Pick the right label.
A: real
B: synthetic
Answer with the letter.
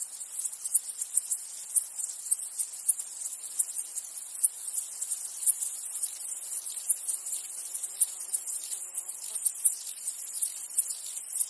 A